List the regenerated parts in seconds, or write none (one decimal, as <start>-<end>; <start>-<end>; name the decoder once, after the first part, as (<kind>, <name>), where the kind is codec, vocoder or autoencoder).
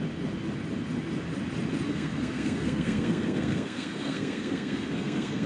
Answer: 1.9-5.5 (codec, SNAC)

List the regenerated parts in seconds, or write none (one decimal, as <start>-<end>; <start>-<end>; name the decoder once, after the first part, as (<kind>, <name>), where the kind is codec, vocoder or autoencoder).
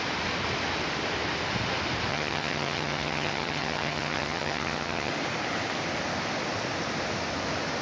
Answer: 2.1-5.1 (vocoder, HiFi-GAN)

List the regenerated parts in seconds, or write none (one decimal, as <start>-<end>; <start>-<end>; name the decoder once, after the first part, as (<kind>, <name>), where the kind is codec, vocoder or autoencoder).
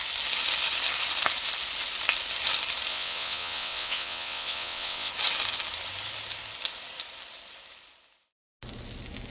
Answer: 2.9-5.1 (vocoder, WaveNeXt)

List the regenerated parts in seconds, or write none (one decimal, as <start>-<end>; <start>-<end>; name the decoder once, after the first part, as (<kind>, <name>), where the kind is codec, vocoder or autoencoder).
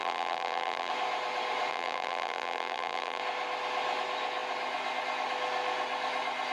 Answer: 0.0-0.9 (vocoder, BigVGAN v2); 1.7-3.2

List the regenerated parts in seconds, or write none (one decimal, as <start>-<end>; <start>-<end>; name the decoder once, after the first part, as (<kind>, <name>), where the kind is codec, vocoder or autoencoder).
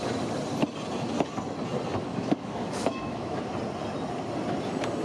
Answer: 2.0-3.5 (autoencoder, DAC-VAE)